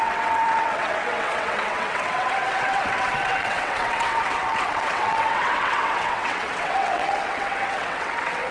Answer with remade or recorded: remade